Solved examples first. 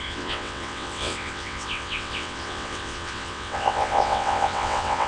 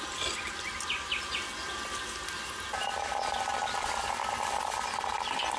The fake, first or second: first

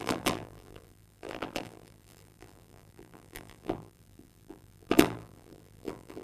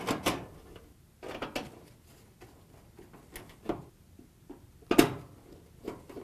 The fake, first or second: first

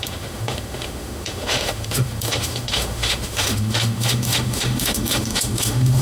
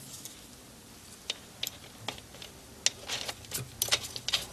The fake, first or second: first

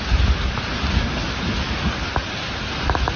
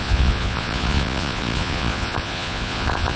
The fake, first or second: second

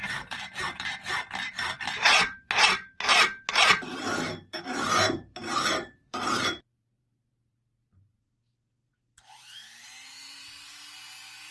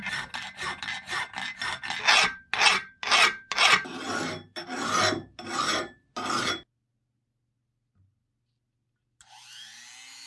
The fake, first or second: first